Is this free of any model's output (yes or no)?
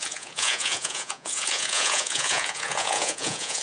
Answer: no